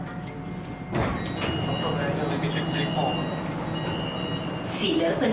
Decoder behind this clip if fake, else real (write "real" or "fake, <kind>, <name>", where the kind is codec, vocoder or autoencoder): real